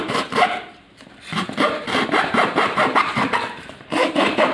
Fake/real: fake